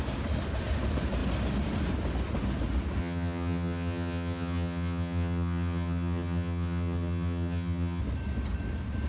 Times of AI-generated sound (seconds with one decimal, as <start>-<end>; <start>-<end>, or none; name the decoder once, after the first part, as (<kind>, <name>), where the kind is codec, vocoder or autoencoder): 3.0-8.0 (vocoder, HiFi-GAN)